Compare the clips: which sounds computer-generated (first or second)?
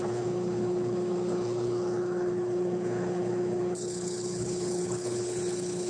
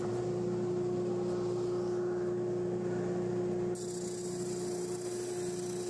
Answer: first